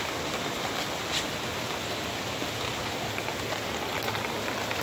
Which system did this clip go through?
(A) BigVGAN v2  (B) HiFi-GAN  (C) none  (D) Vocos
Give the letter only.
C